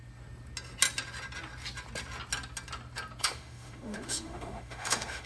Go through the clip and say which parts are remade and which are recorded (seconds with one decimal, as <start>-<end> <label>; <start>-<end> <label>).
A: 0.0-3.2 recorded; 3.2-5.3 remade